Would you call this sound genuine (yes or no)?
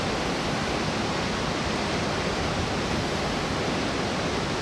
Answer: yes